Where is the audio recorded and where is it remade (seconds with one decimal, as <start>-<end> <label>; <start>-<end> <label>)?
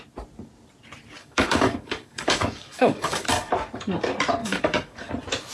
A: 0.0-1.2 recorded; 1.2-3.5 remade; 3.5-4.4 recorded; 4.4-5.1 remade; 5.1-5.5 recorded